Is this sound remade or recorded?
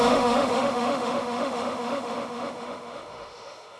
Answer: remade